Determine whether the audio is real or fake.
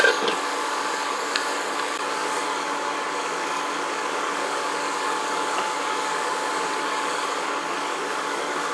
fake